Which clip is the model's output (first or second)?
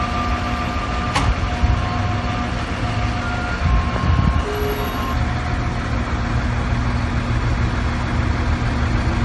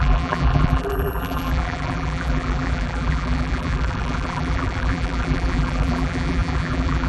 second